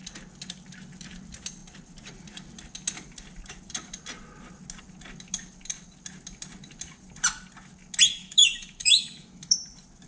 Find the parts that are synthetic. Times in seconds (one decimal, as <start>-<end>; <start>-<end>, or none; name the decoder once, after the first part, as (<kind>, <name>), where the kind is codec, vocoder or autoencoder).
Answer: 8.2-9.5 (autoencoder, DAC-VAE)